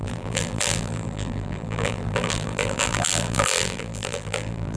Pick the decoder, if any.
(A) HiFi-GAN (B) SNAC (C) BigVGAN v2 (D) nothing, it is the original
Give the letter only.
C